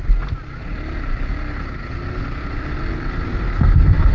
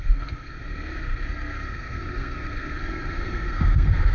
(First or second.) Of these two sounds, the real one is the first